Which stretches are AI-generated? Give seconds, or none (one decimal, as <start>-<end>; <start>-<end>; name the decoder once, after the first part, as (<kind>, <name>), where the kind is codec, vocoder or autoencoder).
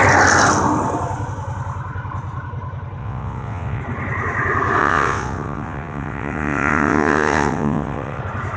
3.0-3.8 (vocoder, WaveNeXt); 4.8-8.2